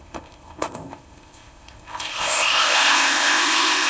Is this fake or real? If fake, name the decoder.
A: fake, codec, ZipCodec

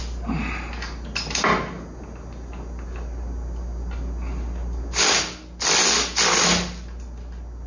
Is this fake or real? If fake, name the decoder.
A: real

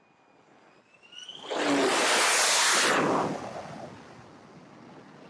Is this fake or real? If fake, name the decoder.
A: real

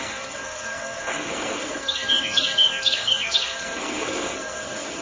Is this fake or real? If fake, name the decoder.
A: fake, codec, SNAC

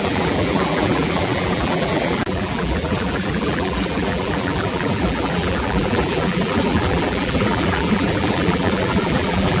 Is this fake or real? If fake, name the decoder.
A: fake, vocoder, BigVGAN v2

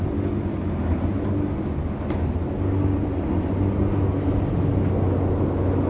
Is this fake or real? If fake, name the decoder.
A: real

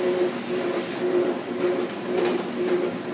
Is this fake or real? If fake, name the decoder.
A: real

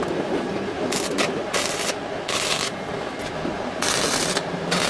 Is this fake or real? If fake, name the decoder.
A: real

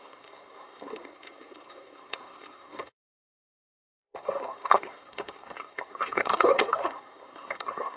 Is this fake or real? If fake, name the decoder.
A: fake, codec, SNAC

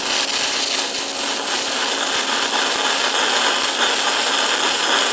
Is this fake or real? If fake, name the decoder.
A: real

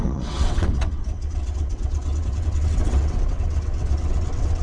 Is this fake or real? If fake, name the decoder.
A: fake, vocoder, WaveNeXt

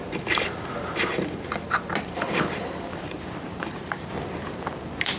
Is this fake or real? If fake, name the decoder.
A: fake, vocoder, BigVGAN v2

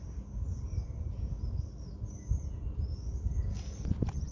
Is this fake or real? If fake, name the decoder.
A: real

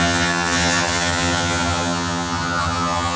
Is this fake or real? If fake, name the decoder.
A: fake, vocoder, HiFi-GAN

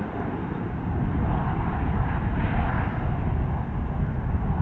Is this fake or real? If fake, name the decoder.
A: real